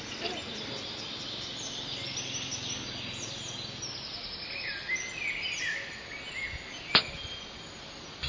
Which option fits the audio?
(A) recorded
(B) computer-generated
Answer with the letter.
A